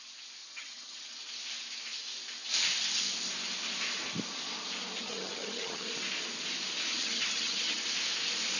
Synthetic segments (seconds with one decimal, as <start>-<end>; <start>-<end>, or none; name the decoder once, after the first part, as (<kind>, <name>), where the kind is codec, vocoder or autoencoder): 0.4-1.0 (vocoder, HiFi-GAN); 5.0-5.9; 6.9-7.8

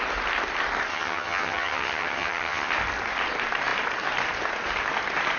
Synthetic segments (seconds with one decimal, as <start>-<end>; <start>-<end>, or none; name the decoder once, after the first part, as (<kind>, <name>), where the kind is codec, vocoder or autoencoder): 0.9-2.7 (vocoder, HiFi-GAN)

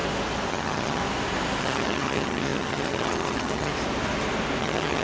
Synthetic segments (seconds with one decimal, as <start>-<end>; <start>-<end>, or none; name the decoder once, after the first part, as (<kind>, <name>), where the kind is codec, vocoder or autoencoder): 0.5-1.0 (vocoder, HiFi-GAN); 1.6-3.7; 4.6-5.0

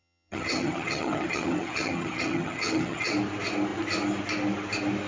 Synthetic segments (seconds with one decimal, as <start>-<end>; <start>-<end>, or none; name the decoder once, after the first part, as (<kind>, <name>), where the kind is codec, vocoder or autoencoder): 0.0-3.1 (vocoder, HiFi-GAN)

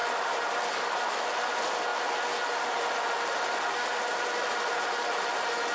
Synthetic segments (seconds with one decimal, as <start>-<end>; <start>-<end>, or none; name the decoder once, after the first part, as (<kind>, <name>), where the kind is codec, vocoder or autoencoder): none

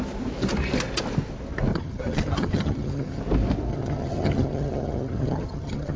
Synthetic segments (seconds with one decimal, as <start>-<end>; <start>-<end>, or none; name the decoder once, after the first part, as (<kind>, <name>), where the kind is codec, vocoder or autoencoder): 1.7-3.2 (vocoder, HiFi-GAN); 3.7-6.0